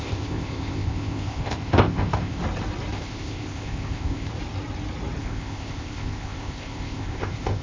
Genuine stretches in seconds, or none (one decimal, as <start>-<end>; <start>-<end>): 2.4-2.9; 4.3-5.2